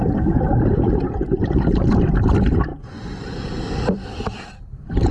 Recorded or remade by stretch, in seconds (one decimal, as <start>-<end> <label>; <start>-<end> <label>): 0.0-2.7 recorded; 2.7-3.2 remade; 3.2-5.1 recorded